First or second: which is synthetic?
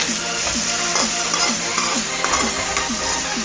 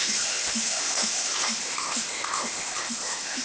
second